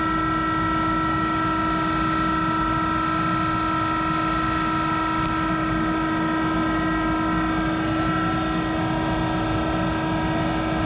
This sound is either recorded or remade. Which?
recorded